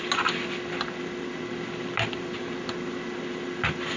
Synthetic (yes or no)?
no